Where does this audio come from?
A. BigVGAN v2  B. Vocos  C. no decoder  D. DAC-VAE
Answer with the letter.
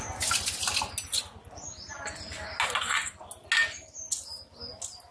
C